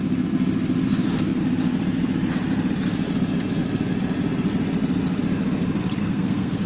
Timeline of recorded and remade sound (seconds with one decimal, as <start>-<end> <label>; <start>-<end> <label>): 0.0-6.0 recorded; 6.0-6.7 remade